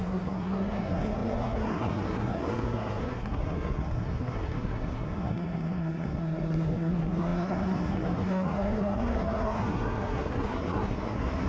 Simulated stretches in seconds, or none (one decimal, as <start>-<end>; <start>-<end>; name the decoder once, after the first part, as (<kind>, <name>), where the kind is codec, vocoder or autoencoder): 0.0-11.5 (codec, SNAC)